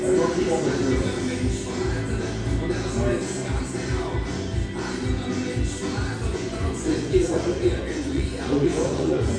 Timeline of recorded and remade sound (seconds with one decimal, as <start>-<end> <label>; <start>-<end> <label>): 0.0-6.3 recorded; 6.3-9.4 remade

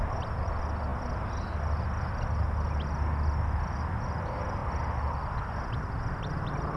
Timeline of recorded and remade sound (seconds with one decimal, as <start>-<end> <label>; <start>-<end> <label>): 0.0-6.8 recorded

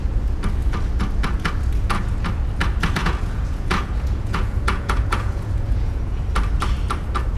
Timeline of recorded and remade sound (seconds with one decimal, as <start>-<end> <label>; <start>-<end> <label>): 0.0-3.0 recorded; 3.0-6.2 remade; 6.2-7.4 recorded